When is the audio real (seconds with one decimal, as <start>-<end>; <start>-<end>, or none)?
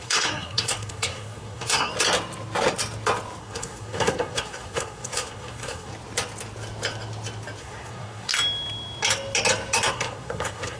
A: 1.9-3.4; 5.9-7.6; 8.3-9.9